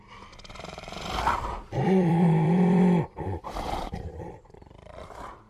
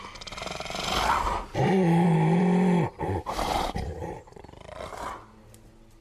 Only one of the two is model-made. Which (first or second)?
first